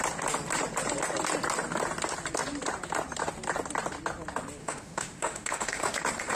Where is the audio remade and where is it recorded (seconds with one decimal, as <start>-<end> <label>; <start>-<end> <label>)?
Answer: 0.0-4.6 recorded; 4.6-6.0 remade; 6.0-6.4 recorded